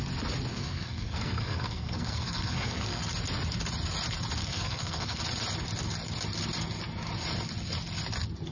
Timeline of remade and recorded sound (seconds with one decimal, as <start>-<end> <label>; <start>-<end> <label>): 0.0-0.5 recorded; 0.5-3.0 remade; 3.0-4.4 recorded; 4.4-5.2 remade; 5.2-8.5 recorded